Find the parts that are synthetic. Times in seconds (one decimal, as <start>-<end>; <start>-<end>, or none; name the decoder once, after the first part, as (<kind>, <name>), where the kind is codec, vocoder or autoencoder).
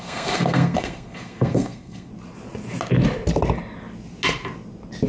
0.0-2.1 (codec, SNAC)